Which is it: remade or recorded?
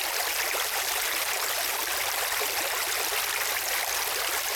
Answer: recorded